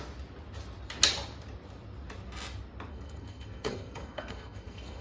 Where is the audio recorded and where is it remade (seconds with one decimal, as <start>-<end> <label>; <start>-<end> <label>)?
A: 0.0-2.9 recorded; 2.9-5.0 remade